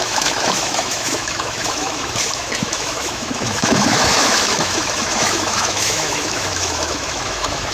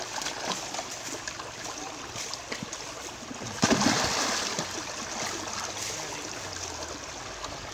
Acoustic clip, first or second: second